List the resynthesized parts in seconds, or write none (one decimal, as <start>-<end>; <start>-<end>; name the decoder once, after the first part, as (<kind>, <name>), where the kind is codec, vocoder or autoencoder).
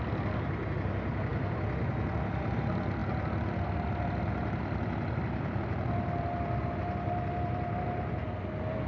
none